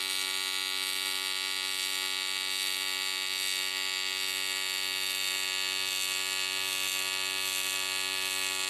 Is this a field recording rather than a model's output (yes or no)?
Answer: yes